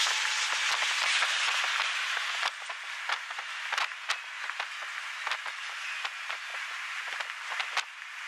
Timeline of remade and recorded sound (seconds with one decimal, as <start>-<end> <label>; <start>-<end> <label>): 0.0-8.3 recorded